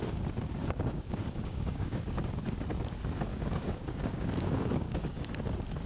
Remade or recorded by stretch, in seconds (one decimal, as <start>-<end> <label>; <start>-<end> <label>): 0.0-0.6 recorded; 0.6-2.5 remade; 2.5-3.3 recorded; 3.3-5.3 remade; 5.3-5.9 recorded